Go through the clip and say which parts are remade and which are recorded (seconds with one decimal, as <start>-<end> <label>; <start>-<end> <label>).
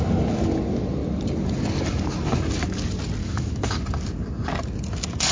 0.0-3.2 recorded; 3.2-3.8 remade; 3.8-5.3 recorded